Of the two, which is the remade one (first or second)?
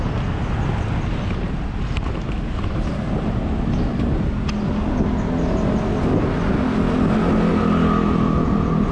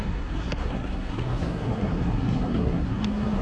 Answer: second